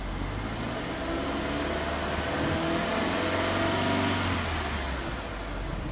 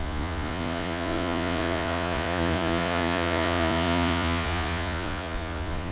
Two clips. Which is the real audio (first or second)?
first